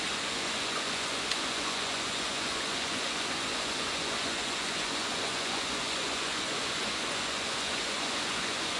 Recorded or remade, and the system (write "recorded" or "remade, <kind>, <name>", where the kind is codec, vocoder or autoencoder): remade, vocoder, Vocos